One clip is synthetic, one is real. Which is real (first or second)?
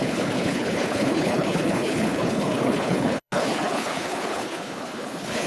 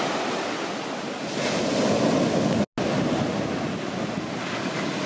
second